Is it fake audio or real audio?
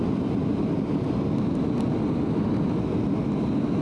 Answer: real